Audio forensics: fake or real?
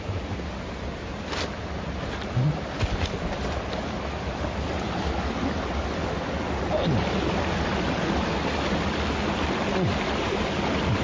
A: real